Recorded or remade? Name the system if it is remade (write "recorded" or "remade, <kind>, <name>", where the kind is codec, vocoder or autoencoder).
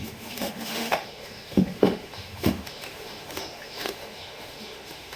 remade, autoencoder, DAC-VAE